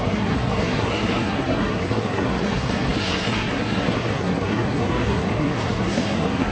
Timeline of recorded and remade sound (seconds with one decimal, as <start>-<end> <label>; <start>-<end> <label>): 0.0-6.5 remade